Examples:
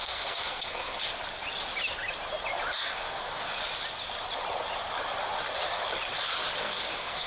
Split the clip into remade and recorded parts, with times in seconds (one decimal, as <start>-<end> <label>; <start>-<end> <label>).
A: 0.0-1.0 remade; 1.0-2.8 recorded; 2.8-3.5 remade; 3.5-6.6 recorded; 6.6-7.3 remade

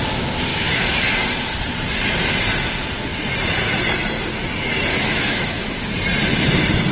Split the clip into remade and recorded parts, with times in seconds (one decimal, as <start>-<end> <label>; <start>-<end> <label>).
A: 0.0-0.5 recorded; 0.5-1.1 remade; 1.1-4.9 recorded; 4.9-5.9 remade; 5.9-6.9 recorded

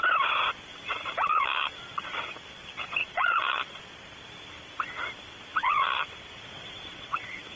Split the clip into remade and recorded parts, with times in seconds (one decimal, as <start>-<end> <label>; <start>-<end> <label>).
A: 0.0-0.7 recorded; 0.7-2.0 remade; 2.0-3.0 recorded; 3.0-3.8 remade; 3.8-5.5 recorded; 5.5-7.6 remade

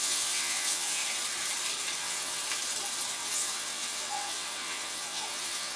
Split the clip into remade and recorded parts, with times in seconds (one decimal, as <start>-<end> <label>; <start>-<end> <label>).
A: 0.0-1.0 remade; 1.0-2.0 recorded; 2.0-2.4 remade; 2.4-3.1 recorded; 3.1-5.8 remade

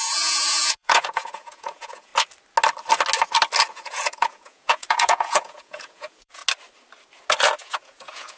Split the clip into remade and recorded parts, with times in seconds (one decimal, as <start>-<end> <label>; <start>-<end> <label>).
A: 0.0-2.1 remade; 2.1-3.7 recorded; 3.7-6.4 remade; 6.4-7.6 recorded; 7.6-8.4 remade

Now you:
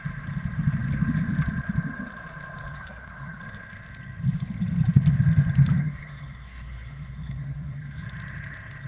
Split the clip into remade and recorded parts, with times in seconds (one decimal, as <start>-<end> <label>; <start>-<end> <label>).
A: 0.0-2.7 recorded; 2.7-3.4 remade; 3.4-5.8 recorded; 5.8-8.0 remade; 8.0-8.9 recorded

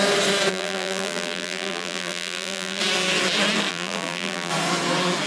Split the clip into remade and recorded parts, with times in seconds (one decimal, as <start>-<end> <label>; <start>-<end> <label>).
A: 0.0-0.5 recorded; 0.5-2.8 remade; 2.8-3.7 recorded; 3.7-4.5 remade; 4.5-5.3 recorded

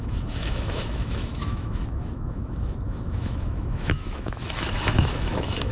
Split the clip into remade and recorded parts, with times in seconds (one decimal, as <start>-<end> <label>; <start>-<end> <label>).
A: 0.0-5.7 remade